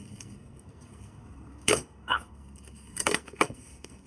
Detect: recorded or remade remade